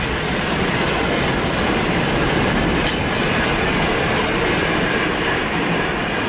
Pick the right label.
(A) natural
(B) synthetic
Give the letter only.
B